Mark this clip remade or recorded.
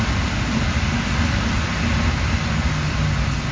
recorded